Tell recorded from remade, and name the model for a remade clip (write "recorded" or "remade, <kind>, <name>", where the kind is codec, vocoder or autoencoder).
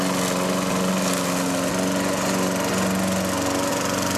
recorded